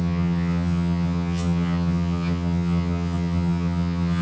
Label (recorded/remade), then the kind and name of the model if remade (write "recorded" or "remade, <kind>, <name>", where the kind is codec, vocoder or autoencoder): remade, vocoder, HiFi-GAN